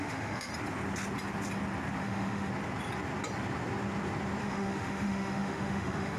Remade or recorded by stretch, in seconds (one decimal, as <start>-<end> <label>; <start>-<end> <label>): 0.0-0.5 remade; 0.5-2.0 recorded; 2.0-2.5 remade; 2.5-4.4 recorded; 4.4-6.2 remade

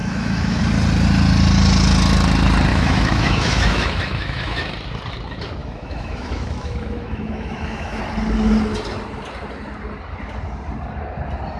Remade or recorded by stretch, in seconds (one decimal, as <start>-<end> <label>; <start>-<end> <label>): 0.0-0.6 remade; 0.6-2.7 recorded; 2.7-4.7 remade; 4.7-5.6 recorded; 5.6-8.0 remade; 8.0-11.6 recorded

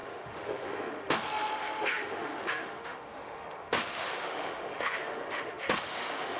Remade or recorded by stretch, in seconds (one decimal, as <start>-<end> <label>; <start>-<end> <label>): 0.0-6.4 remade

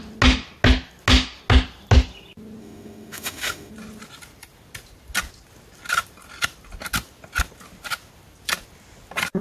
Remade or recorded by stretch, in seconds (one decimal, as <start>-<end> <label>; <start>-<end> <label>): 0.0-2.6 recorded; 2.6-3.7 remade; 3.7-9.4 recorded

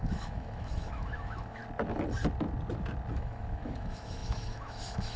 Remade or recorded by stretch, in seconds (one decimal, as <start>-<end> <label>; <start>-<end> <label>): 0.0-1.6 remade; 1.6-3.1 recorded; 3.1-5.2 remade